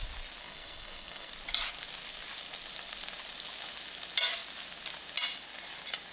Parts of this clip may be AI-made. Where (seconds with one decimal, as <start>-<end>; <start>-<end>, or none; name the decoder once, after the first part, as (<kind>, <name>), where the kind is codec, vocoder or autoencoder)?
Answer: 0.4-1.3 (codec, SNAC)